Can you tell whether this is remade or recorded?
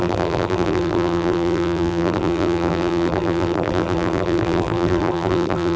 remade